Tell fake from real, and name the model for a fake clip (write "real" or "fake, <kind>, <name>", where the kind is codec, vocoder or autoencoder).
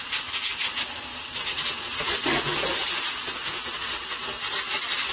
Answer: real